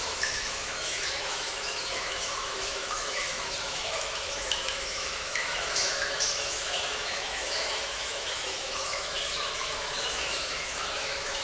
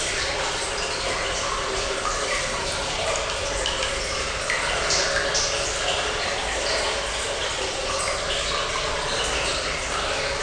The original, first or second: second